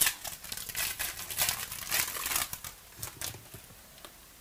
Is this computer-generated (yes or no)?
no